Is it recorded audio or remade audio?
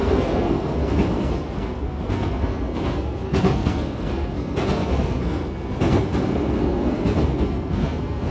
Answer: remade